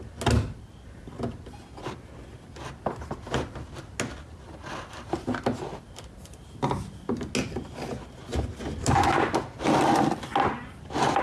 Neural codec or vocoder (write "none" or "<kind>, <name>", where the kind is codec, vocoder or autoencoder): none